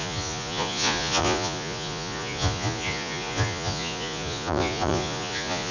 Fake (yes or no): yes